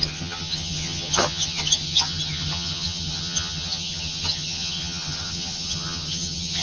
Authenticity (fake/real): fake